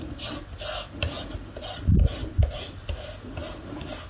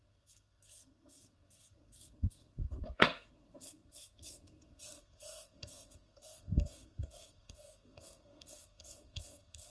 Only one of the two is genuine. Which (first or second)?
first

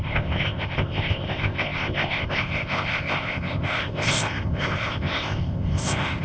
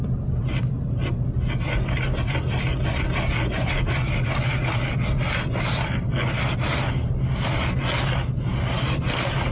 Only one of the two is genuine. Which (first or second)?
second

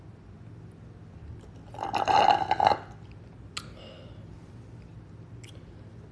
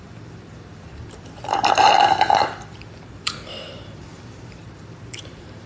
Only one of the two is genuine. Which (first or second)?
first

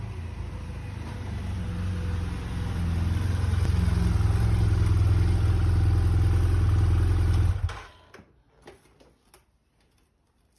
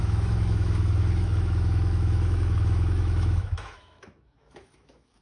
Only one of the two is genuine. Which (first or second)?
first